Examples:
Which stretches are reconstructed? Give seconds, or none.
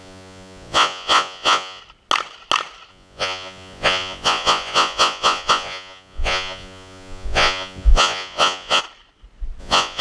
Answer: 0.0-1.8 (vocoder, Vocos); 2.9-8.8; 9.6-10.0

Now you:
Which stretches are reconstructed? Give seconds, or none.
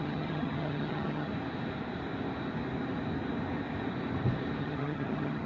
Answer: 0.0-1.3 (vocoder, HiFi-GAN); 4.6-5.5